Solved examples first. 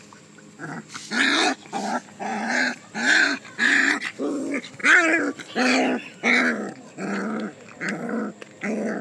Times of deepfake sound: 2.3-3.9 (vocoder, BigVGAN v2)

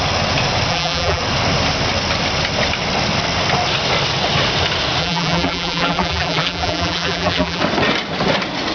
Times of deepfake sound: 0.7-1.2 (vocoder, BigVGAN v2); 5.0-7.6